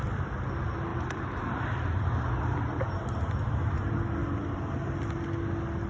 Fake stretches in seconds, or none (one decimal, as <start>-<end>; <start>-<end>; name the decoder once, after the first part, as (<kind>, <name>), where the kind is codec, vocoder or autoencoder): 0.9-1.6 (vocoder, BigVGAN v2)